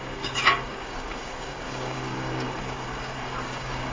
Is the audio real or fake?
fake